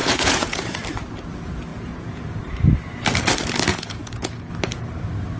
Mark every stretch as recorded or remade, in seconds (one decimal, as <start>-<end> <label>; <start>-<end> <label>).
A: 0.0-0.8 remade; 0.8-1.7 recorded; 1.7-2.4 remade; 2.4-3.7 recorded; 3.7-4.5 remade; 4.5-5.4 recorded